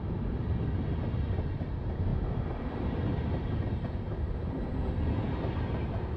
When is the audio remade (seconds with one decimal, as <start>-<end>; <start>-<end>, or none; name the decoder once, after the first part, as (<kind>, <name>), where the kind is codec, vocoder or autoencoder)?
none